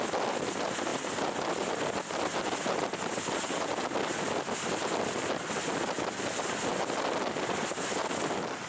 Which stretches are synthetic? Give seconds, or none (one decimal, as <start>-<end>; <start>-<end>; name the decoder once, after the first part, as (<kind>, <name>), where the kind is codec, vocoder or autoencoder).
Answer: none